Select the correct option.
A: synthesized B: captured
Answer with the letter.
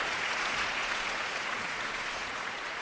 A